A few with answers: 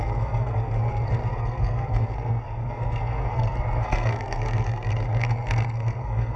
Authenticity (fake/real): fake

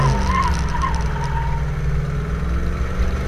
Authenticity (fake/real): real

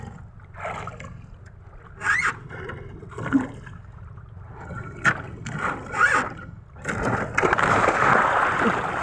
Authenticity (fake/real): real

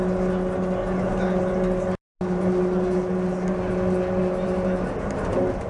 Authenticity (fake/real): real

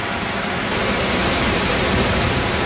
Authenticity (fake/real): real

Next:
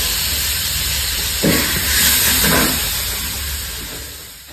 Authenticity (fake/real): real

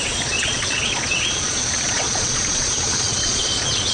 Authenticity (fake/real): fake